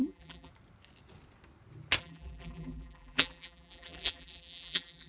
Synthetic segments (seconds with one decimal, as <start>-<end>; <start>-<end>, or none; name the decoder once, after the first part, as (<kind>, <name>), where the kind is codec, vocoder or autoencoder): 0.0-0.5 (vocoder, BigVGAN v2); 2.0-5.1